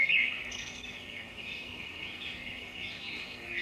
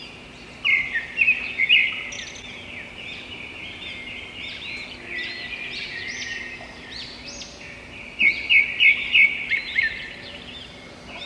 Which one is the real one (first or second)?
second